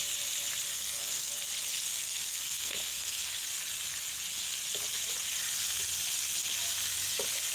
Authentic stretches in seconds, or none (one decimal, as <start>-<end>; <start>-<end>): 0.0-0.7; 1.3-1.9; 3.4-7.5